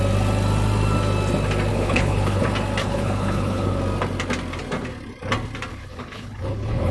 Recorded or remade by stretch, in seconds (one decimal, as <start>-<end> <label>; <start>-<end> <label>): 0.0-1.7 recorded; 1.7-2.4 remade; 2.4-2.8 recorded; 2.8-3.8 remade; 3.8-5.7 recorded; 5.7-6.9 remade